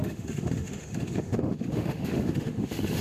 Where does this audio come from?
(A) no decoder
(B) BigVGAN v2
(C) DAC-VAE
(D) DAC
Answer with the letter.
C